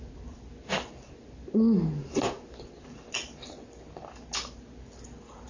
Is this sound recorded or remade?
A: recorded